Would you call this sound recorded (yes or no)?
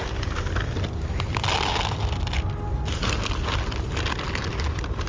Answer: yes